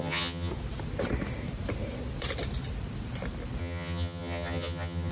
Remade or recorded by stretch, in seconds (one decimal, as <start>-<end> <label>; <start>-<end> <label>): 0.0-0.5 remade; 0.5-3.6 recorded; 3.6-5.1 remade